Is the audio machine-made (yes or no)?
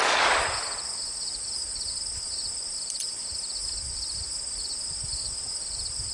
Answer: no